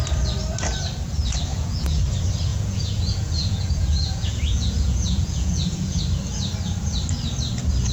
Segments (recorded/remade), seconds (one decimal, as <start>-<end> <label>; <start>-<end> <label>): 0.0-1.5 recorded; 1.5-2.0 remade; 2.0-2.5 recorded; 2.5-6.0 remade; 6.0-7.9 recorded